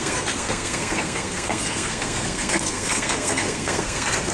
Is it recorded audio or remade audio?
remade